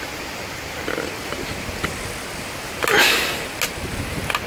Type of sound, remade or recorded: recorded